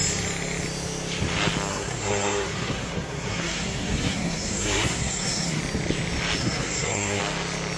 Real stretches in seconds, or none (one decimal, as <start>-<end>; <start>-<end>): 0.0-1.7; 5.6-6.4; 7.2-7.8